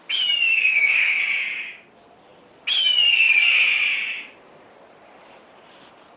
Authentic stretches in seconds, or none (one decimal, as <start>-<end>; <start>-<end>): 0.0-0.7; 1.2-6.2